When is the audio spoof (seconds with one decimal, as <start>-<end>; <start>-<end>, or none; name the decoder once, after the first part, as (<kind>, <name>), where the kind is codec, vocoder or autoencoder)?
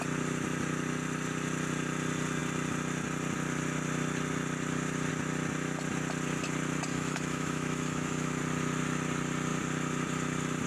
6.9-8.4 (autoencoder, DAC-VAE)